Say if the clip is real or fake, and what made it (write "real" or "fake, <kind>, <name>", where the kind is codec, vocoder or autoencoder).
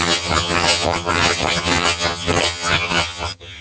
fake, vocoder, HiFi-GAN